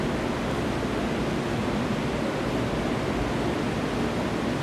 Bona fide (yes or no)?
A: yes